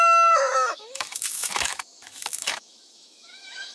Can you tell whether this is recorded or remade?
remade